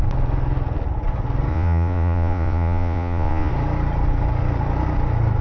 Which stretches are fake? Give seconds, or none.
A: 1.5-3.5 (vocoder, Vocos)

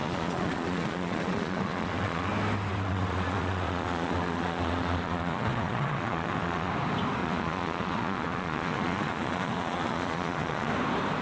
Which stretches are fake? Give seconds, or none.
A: 0.0-2.3 (vocoder, Vocos); 2.7-6.7; 7.2-10.7

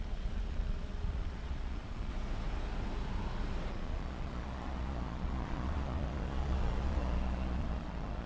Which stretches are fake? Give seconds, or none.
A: 0.0-2.1 (vocoder, Vocos); 3.7-8.3

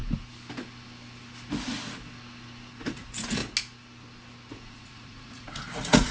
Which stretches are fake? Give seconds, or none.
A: 2.7-3.4 (vocoder, Vocos); 4.5-6.1

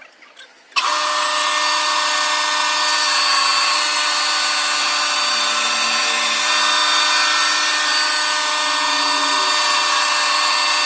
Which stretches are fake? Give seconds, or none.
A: none

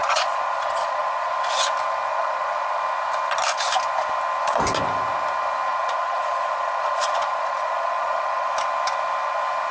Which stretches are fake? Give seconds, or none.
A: 0.0-1.3 (vocoder, Vocos); 2.1-2.8; 5.7-8.5